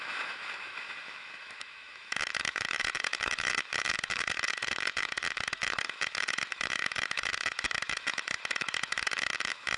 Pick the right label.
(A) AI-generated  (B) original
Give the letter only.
A